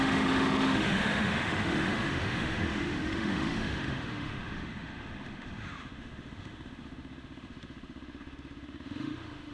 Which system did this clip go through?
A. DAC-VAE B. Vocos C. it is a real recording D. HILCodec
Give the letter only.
A